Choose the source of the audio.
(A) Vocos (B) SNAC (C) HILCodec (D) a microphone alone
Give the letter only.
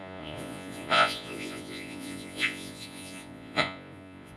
A